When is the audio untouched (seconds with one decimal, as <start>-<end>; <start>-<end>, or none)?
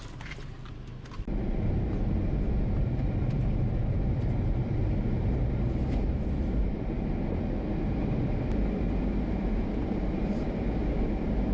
0.0-3.8; 7.1-9.8; 10.8-11.5